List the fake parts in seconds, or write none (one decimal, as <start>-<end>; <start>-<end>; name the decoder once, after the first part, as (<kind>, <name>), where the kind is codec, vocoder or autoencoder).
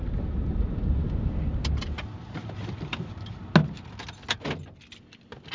none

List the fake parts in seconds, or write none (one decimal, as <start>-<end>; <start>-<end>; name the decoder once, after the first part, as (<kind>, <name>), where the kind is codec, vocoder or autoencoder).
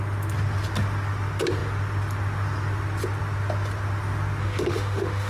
4.4-5.3 (autoencoder, DAC-VAE)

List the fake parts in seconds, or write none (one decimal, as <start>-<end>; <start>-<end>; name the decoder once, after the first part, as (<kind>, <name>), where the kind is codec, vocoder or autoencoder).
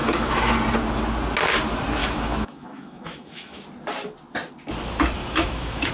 0.0-0.5 (autoencoder, DAC-VAE); 2.0-3.6; 5.2-5.9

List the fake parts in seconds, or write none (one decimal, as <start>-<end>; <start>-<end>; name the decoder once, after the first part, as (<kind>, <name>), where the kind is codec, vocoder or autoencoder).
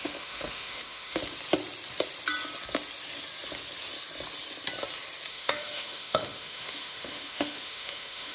0.0-1.2 (autoencoder, DAC-VAE); 5.3-8.3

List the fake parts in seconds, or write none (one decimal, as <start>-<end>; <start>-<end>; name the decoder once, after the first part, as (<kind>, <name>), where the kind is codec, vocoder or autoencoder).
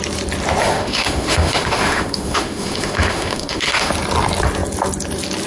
0.6-3.9 (autoencoder, DAC-VAE)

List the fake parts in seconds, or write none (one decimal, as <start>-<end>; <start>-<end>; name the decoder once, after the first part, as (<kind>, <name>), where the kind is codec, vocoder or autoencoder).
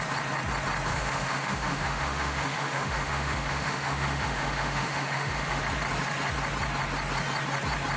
0.9-5.6 (autoencoder, DAC-VAE)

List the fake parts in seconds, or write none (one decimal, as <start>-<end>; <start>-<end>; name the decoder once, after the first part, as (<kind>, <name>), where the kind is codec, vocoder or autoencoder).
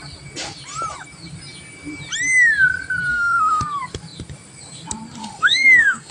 3.1-3.6 (autoencoder, DAC-VAE); 5.2-6.1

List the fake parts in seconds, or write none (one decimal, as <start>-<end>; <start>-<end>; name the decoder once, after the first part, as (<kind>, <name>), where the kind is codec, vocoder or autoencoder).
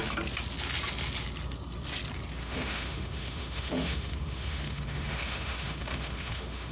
2.4-6.7 (autoencoder, DAC-VAE)